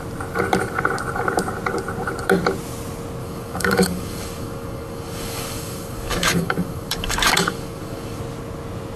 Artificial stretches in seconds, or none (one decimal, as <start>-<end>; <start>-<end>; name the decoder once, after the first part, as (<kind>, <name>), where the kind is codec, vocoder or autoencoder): 3.2-8.2 (codec, DAC)